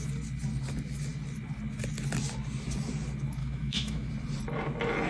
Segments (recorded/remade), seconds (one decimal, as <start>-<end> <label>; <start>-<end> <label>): 0.0-3.4 recorded; 3.4-4.1 remade; 4.1-5.1 recorded